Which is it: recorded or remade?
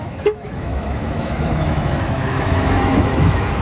remade